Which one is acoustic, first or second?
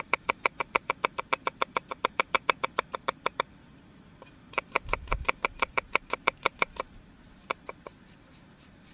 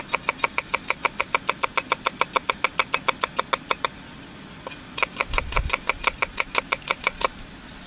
second